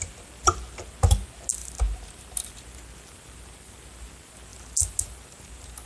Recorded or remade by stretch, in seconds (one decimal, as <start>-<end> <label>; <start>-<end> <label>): 0.0-5.9 recorded

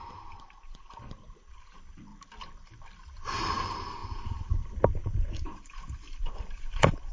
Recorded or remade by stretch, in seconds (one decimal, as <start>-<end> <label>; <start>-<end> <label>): 0.0-2.1 remade; 2.1-3.0 recorded; 3.0-7.1 remade

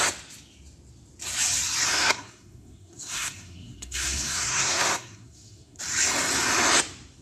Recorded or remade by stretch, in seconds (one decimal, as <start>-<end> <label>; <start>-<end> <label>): 0.0-1.9 recorded; 1.9-5.8 remade; 5.8-7.2 recorded

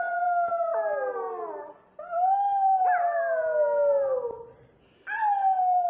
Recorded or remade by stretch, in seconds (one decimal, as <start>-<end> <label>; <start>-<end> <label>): 0.0-5.9 recorded